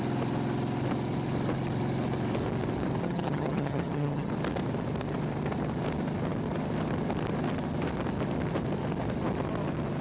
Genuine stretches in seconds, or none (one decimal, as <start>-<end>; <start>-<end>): 0.0-3.0; 4.3-10.0